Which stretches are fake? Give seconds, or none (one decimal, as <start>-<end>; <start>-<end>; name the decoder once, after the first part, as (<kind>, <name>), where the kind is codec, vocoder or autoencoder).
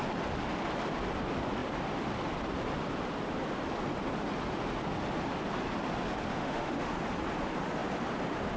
6.3-6.9 (autoencoder, DAC-VAE)